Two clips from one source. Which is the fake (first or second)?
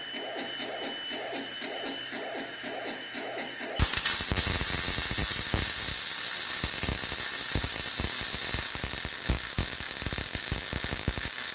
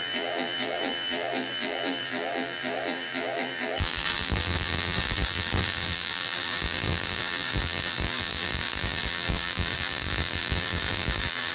second